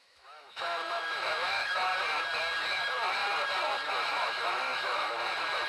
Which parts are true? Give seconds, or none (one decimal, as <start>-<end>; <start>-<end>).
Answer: 1.9-2.7; 3.2-3.9